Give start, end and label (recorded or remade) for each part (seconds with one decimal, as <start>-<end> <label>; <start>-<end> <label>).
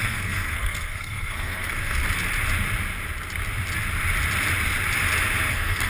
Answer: 0.0-2.0 remade; 2.0-5.5 recorded; 5.5-5.9 remade